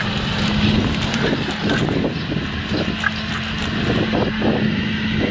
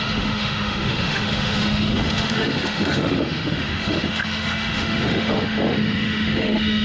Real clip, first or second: first